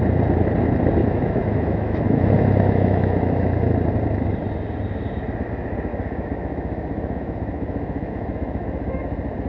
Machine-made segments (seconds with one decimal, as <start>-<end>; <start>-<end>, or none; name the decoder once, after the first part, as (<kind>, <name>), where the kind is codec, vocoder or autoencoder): 1.0-3.7 (autoencoder, DAC-VAE); 5.9-9.0